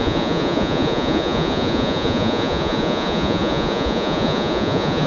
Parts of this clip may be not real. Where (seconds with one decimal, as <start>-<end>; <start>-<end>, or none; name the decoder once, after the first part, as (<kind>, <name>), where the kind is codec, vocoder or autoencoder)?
0.0-5.1 (vocoder, Vocos)